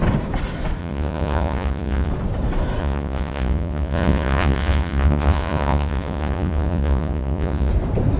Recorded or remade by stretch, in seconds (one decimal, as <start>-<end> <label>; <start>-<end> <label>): 0.0-0.8 recorded; 0.8-2.1 remade; 2.1-2.8 recorded; 2.8-7.7 remade; 7.7-8.2 recorded

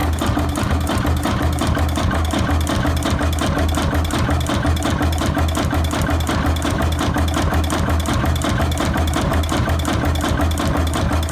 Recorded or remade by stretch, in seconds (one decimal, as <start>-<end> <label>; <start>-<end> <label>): 0.0-11.3 recorded

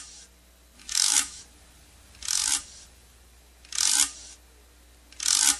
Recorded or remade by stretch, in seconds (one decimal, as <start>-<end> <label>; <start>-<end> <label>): 0.0-0.8 recorded; 0.8-1.4 remade; 1.4-5.6 recorded

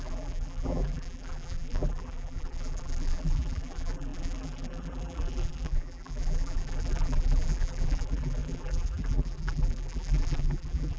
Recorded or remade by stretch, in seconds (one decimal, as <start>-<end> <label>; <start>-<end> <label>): 0.0-11.0 remade

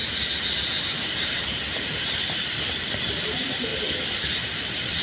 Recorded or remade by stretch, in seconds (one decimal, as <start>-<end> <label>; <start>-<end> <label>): 0.0-5.0 recorded

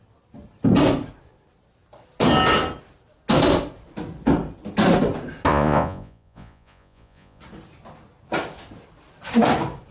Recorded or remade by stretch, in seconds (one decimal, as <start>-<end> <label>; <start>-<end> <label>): 0.0-5.5 recorded; 5.5-7.4 remade; 7.4-9.9 recorded

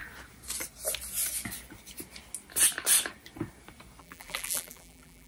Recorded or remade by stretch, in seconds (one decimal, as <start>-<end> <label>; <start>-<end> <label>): 0.0-4.0 recorded; 4.0-5.3 remade

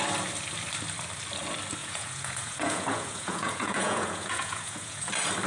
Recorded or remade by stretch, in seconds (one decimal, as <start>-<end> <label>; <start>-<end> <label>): 0.0-1.8 recorded; 1.8-5.1 remade; 5.1-5.5 recorded